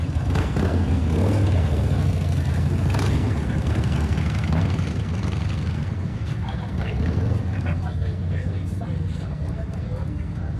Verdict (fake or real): fake